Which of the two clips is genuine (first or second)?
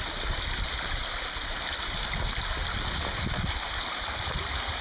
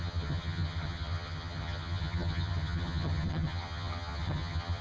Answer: first